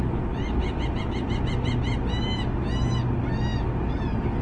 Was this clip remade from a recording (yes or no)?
no